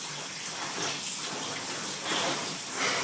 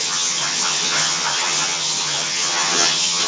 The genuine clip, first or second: first